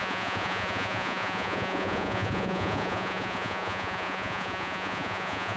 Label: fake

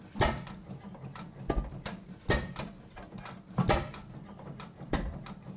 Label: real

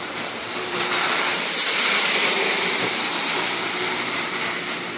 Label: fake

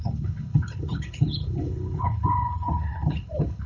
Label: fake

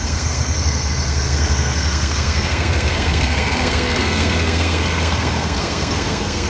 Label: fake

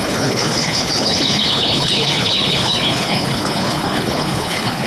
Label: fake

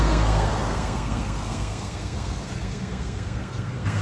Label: fake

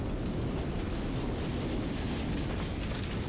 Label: real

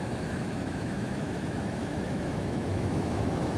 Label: fake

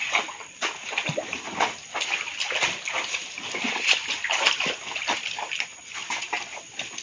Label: real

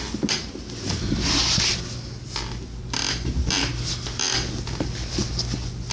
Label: real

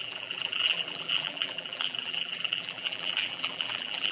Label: fake